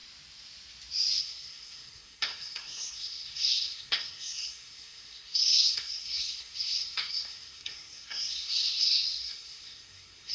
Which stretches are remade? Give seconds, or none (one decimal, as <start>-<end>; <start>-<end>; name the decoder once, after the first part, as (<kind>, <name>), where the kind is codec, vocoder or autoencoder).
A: 1.2-10.3 (codec, SNAC)